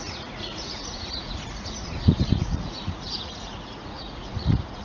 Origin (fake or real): fake